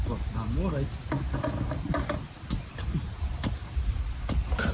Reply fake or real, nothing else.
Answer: real